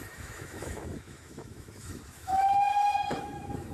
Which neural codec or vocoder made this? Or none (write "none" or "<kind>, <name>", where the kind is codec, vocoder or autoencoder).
autoencoder, DAC-VAE